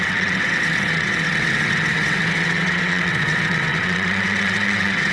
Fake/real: fake